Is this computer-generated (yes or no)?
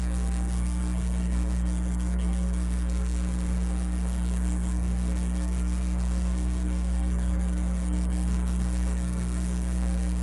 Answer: yes